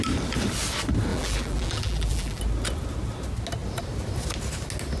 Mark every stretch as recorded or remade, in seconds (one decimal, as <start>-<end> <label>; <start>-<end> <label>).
0.0-1.1 recorded; 1.1-2.4 remade; 2.4-5.0 recorded